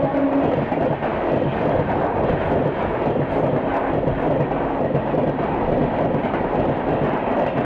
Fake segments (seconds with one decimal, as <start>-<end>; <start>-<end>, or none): none